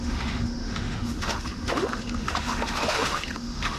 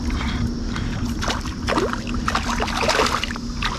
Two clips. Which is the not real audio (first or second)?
first